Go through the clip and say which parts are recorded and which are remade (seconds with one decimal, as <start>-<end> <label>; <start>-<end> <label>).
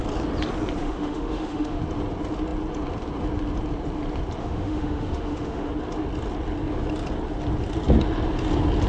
0.0-0.8 recorded; 0.8-1.8 remade; 1.8-4.4 recorded; 4.4-5.7 remade; 5.7-8.9 recorded